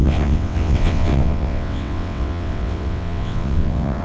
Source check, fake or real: fake